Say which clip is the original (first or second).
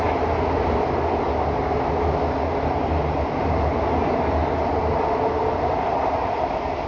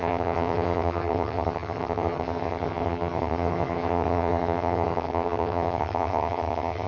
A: first